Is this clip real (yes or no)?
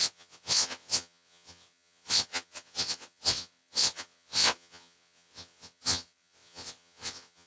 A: no